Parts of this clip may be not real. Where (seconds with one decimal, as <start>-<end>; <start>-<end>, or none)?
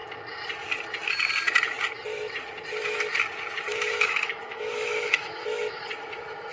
3.7-5.8